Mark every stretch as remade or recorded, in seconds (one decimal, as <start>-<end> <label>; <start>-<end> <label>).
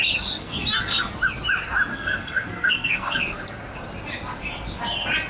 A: 0.0-0.4 recorded; 0.4-1.1 remade; 1.1-1.9 recorded; 1.9-3.2 remade; 3.2-5.3 recorded